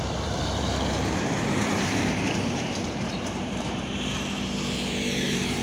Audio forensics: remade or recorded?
remade